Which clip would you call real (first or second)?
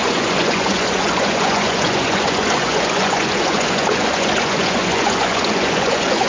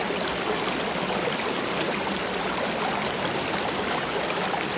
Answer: second